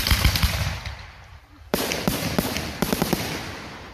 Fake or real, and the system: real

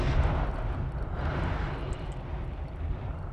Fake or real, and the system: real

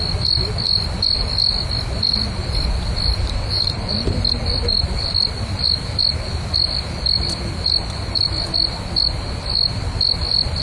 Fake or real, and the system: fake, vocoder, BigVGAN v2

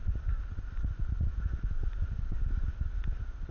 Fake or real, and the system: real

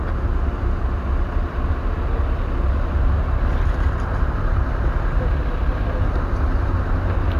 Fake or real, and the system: real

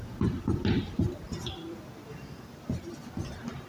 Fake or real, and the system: real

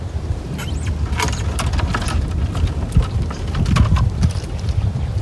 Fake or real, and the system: real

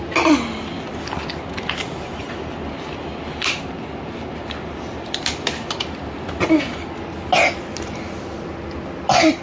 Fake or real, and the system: real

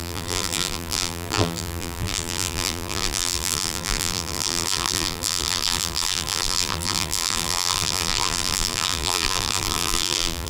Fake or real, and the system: fake, vocoder, BigVGAN v2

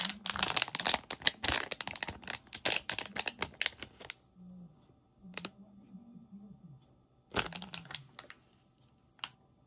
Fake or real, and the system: real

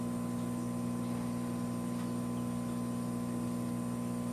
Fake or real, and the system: real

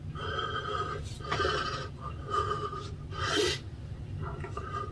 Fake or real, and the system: real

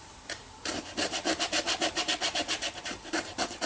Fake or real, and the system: fake, vocoder, BigVGAN v2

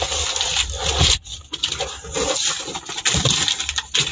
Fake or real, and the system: real